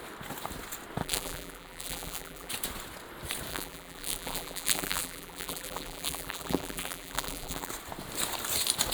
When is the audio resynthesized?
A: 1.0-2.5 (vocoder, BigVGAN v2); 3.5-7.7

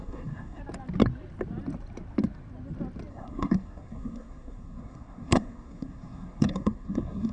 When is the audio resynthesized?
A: 0.0-0.6 (codec, SNAC); 3.1-7.3

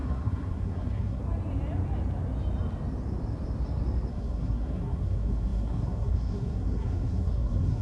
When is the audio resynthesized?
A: 0.0-1.2 (codec, SNAC); 4.1-7.8

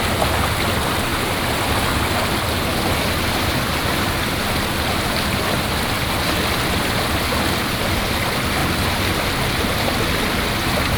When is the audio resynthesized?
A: 8.6-9.2 (vocoder, BigVGAN v2)

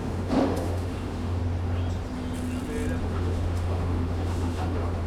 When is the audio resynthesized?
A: 0.0-1.4 (autoencoder, DAC-VAE); 3.0-5.1

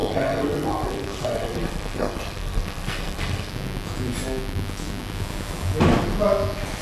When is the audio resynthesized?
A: 0.0-3.5 (codec, SNAC)